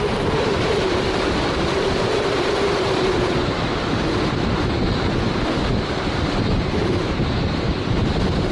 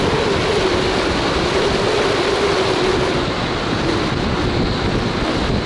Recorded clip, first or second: second